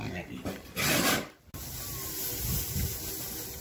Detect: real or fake real